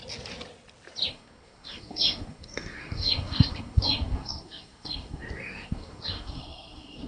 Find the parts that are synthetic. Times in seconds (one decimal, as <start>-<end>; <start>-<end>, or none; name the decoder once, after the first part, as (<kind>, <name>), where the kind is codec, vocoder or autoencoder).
1.1-7.1 (codec, SNAC)

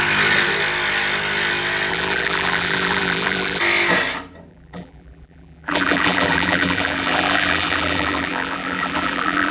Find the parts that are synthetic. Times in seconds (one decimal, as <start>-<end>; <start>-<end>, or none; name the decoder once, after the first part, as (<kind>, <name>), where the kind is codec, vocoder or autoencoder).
1.9-3.6 (vocoder, BigVGAN v2); 4.5-9.5

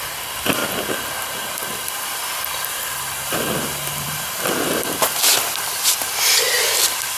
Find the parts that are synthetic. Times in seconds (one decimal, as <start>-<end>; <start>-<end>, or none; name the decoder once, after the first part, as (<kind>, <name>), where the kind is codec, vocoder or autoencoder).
0.0-0.6 (vocoder, BigVGAN v2); 2.7-5.3; 6.0-7.2

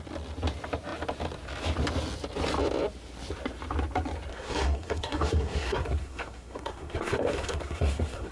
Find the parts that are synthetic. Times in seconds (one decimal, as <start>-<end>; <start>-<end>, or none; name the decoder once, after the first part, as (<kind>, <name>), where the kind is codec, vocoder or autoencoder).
4.3-8.3 (codec, SNAC)

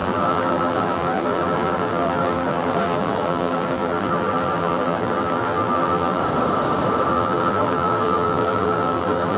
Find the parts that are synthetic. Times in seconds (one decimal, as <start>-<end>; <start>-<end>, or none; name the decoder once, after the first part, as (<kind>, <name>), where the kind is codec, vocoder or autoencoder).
0.0-6.2 (vocoder, BigVGAN v2); 7.1-9.4

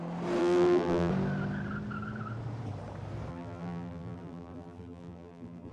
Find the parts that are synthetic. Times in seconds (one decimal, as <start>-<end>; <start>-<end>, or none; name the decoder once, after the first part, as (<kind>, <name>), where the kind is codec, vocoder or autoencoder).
0.4-1.1 (vocoder, BigVGAN v2); 3.3-5.7